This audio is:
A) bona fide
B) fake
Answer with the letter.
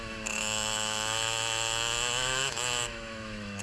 B